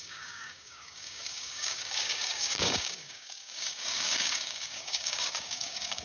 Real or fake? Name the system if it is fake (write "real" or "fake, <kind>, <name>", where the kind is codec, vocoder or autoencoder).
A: fake, codec, DAC